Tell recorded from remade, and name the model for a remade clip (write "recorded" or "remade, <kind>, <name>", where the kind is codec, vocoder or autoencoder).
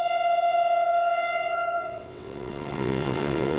remade, vocoder, WaveNeXt